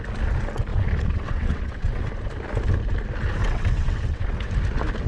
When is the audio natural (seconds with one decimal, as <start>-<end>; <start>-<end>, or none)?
0.0-0.7; 2.1-3.4; 4.5-5.1